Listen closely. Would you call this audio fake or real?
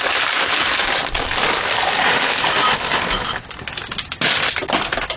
fake